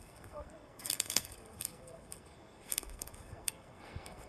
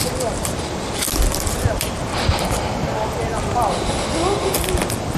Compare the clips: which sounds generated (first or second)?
first